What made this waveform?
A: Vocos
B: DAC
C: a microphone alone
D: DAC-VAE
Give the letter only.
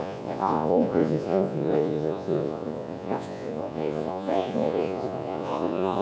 A